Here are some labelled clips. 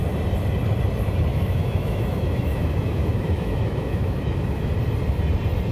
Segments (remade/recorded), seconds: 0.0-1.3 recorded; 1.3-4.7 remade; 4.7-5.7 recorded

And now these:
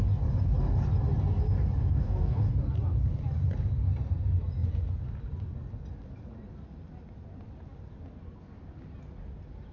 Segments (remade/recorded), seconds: 0.0-1.8 recorded; 1.8-2.5 remade; 2.5-9.7 recorded

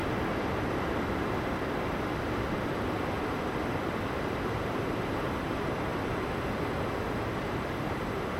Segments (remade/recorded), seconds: 0.0-4.2 recorded; 4.2-5.9 remade; 5.9-7.1 recorded; 7.1-8.4 remade

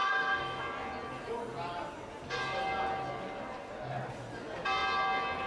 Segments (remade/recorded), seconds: 0.0-0.6 remade; 0.6-5.5 recorded

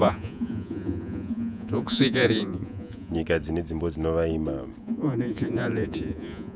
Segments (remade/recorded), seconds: 0.0-3.1 remade; 3.1-4.8 recorded; 4.8-6.6 remade

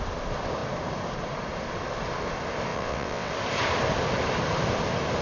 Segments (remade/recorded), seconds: 0.0-2.7 recorded; 2.7-3.3 remade; 3.3-5.2 recorded

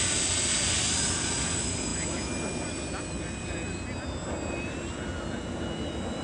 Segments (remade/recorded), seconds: 0.0-6.2 recorded

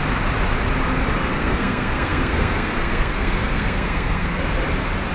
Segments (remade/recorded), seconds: 0.0-1.3 recorded; 1.3-4.4 remade; 4.4-5.1 recorded